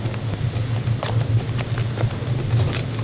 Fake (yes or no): no